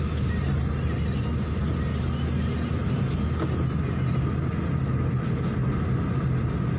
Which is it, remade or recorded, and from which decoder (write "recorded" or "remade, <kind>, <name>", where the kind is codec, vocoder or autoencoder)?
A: recorded